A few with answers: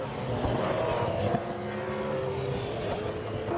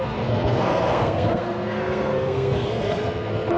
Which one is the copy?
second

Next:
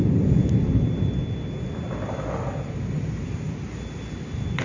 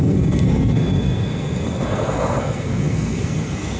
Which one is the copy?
second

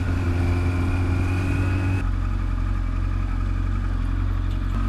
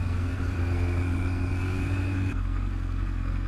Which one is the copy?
second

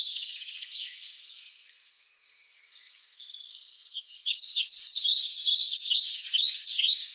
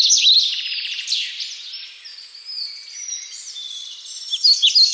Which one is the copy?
first